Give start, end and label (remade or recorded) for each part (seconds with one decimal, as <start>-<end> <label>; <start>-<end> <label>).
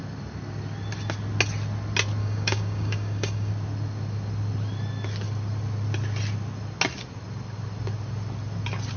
0.0-2.2 recorded; 2.2-3.5 remade; 3.5-9.0 recorded